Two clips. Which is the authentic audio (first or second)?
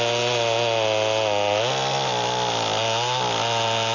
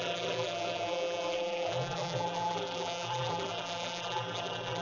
first